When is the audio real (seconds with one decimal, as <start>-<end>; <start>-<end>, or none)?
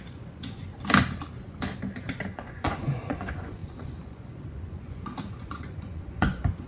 0.7-2.0